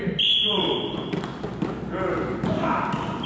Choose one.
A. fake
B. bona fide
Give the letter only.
B